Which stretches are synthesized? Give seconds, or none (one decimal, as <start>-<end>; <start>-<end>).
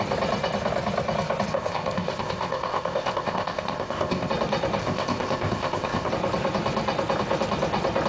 1.5-4.3; 4.8-6.1